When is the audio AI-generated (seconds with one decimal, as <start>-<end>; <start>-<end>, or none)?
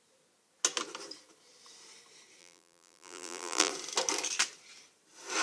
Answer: 2.4-3.7